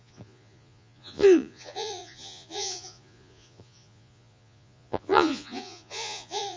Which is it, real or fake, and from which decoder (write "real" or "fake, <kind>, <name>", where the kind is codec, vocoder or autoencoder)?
fake, vocoder, Vocos